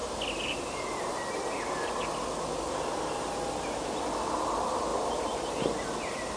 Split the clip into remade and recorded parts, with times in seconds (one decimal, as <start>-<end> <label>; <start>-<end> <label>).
0.0-6.4 recorded